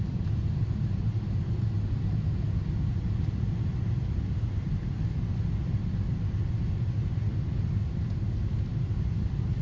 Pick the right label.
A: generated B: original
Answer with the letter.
B